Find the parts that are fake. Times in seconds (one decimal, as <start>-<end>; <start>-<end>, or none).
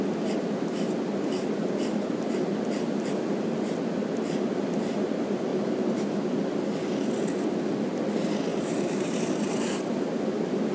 5.5-6.2; 8.5-10.1